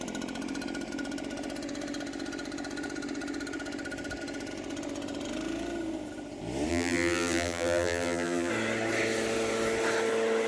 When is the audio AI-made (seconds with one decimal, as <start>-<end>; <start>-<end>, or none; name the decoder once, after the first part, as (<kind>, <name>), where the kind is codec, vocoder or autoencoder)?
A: 6.7-8.5 (vocoder, BigVGAN v2)